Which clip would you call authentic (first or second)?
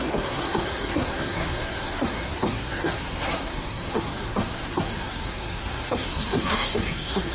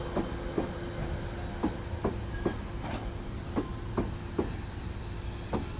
second